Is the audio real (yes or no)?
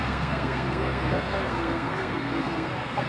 no